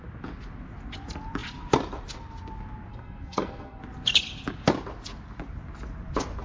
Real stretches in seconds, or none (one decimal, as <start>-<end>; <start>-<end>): 0.0-2.9; 3.8-6.4

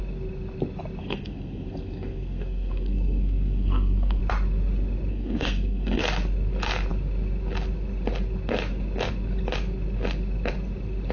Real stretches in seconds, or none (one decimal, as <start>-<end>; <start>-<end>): 0.0-1.0; 4.2-5.1; 6.0-11.1

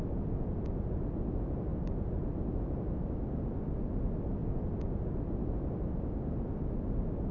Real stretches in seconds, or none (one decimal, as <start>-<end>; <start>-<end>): 0.0-7.3

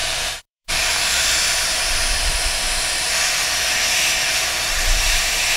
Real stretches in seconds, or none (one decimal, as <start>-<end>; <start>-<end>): 2.0-4.7

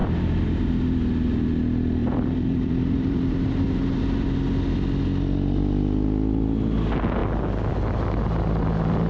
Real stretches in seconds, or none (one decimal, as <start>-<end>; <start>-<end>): 0.7-2.0; 4.2-9.1

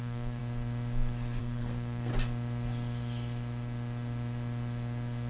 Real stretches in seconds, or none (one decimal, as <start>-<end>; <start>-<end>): 0.4-1.4; 2.1-5.3

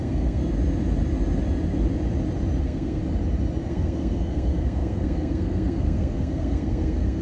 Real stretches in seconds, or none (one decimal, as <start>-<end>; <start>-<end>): 0.4-2.6; 3.0-3.7